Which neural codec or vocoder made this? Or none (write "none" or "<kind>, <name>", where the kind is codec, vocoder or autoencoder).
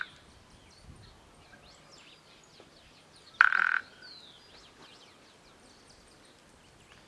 none